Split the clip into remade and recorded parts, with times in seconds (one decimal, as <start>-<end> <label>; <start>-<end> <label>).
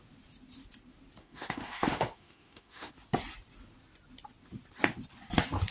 0.0-1.2 recorded; 1.2-2.9 remade; 2.9-5.7 recorded